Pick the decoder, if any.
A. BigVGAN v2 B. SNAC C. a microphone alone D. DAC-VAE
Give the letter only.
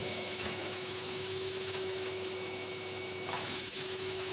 D